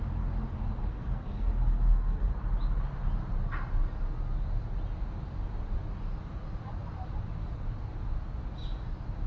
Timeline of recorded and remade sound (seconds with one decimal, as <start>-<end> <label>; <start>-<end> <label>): 0.0-0.8 recorded; 0.8-2.3 remade; 2.3-9.3 recorded